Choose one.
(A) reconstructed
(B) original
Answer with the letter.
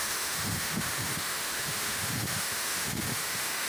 A